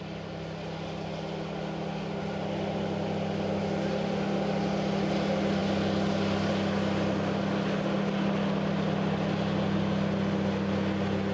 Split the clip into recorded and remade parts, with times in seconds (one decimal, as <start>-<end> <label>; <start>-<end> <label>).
0.0-11.3 recorded